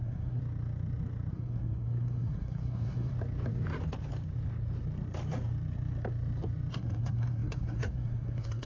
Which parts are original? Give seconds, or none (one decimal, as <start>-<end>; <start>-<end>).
0.4-1.3; 3.1-6.7